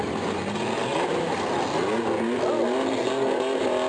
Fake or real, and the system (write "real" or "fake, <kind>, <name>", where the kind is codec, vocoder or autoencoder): real